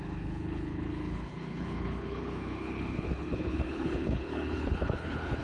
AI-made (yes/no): yes